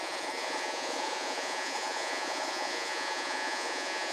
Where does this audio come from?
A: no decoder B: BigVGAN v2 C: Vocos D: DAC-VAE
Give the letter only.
C